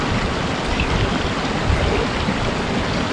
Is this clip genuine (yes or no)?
yes